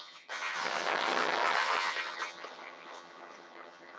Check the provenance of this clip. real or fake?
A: fake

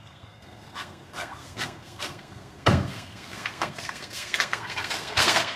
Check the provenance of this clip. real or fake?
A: fake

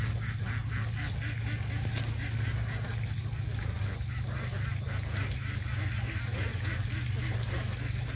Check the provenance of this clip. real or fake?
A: real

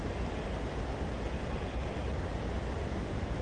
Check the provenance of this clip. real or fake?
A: real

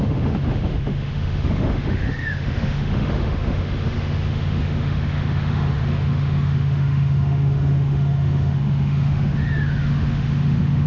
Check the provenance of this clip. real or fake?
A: fake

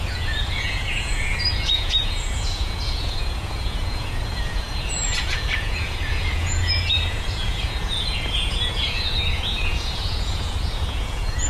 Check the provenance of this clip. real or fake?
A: fake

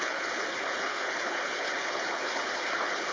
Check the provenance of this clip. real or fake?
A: fake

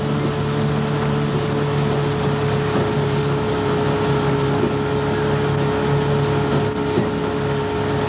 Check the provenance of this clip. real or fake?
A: real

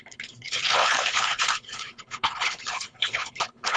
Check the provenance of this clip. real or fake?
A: fake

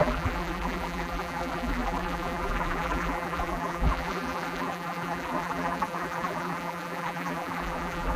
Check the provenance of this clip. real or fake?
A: fake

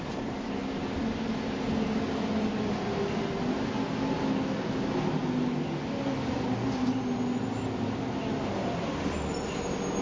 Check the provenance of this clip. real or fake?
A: real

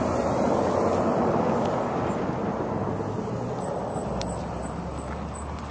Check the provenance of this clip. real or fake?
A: real